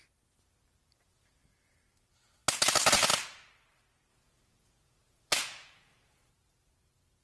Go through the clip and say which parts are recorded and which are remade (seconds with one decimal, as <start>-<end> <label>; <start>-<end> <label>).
0.0-4.1 recorded; 4.1-6.3 remade; 6.3-7.2 recorded